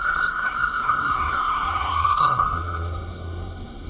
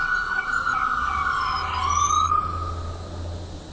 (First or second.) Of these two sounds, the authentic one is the second